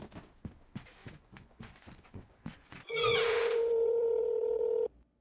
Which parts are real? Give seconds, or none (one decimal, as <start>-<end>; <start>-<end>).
0.0-1.0; 4.1-5.2